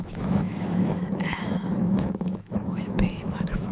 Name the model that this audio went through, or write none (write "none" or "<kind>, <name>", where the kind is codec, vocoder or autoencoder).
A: autoencoder, DAC-VAE